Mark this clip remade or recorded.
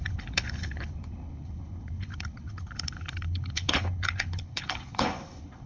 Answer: remade